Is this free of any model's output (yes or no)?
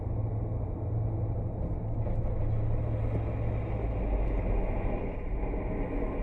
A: yes